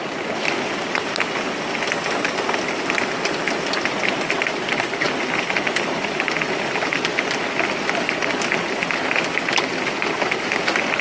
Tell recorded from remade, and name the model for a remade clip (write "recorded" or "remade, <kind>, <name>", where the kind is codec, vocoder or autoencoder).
recorded